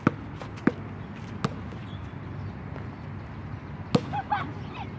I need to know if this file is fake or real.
real